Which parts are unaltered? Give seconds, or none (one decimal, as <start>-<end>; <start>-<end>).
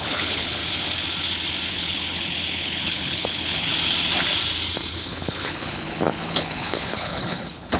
0.6-1.7; 3.7-4.9